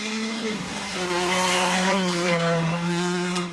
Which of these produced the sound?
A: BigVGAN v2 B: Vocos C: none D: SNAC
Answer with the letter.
D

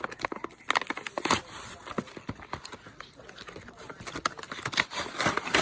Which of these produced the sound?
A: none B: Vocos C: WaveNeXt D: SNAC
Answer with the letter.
A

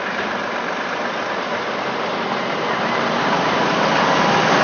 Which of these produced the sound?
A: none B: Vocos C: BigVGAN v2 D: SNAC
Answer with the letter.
A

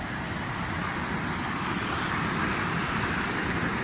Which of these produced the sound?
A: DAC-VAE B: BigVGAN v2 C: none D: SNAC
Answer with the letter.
C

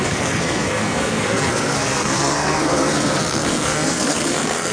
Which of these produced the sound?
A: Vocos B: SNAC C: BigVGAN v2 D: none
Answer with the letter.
B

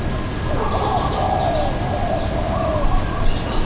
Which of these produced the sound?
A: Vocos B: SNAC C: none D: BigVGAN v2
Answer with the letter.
C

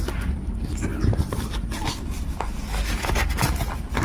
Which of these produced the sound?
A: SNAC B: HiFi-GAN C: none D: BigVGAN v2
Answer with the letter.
C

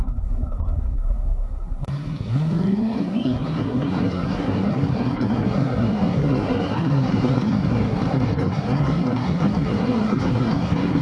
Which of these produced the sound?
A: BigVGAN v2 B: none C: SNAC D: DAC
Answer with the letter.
C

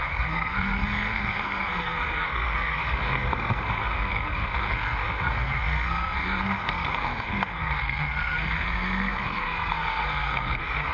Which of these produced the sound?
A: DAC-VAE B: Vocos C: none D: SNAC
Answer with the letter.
D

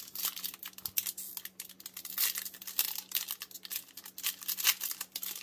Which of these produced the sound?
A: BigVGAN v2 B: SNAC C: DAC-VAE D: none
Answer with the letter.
D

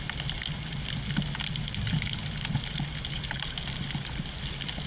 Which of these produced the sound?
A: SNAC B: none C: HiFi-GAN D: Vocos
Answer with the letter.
B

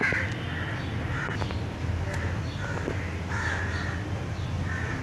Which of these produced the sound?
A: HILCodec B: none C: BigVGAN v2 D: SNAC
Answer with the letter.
B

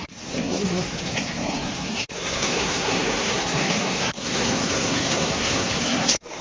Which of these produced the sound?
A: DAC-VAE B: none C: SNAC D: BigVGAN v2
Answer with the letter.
C